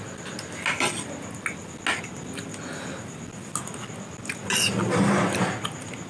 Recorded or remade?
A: recorded